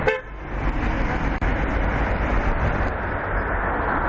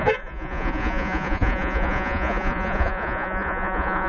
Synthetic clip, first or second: second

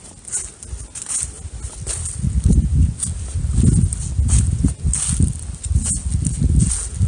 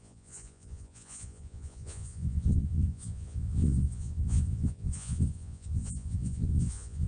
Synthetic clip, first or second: second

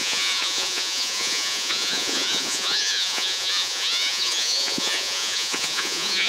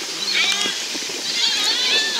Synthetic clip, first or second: first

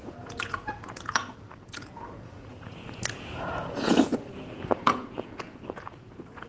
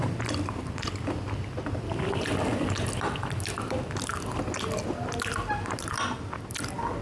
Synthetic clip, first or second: first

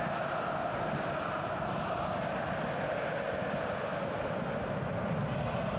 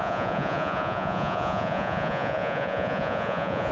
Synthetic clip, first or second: second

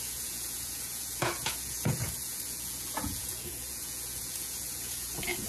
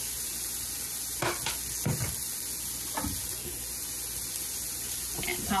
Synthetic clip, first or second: first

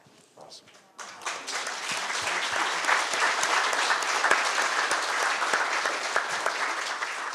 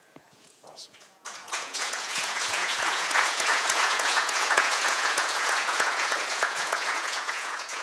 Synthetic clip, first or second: second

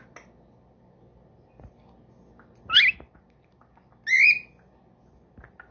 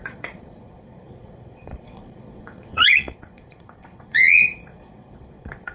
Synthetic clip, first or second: second